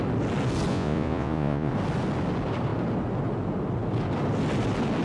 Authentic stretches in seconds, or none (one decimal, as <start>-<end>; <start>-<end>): 0.0-0.7; 1.7-5.0